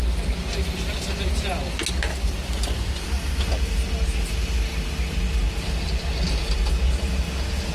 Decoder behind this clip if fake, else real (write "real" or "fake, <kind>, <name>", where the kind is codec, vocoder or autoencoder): real